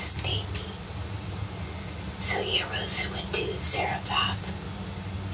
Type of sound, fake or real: real